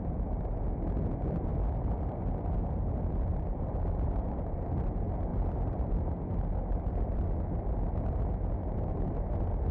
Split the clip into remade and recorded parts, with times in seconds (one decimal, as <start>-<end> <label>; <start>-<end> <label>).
0.0-5.3 recorded; 5.3-7.2 remade; 7.2-9.7 recorded